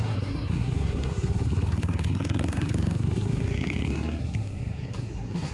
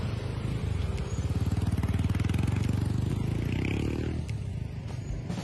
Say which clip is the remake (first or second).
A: first